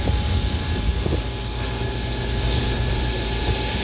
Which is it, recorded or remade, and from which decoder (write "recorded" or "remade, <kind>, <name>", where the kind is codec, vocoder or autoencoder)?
recorded